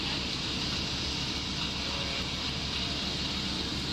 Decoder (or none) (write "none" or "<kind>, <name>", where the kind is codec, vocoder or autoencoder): none